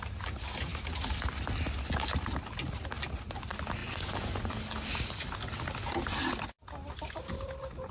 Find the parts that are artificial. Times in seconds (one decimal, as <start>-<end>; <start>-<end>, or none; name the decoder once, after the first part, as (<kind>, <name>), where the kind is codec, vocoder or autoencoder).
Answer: 3.8-4.5 (vocoder, Vocos)